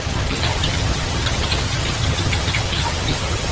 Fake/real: fake